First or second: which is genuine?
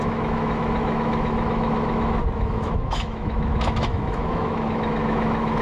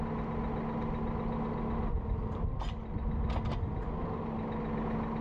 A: second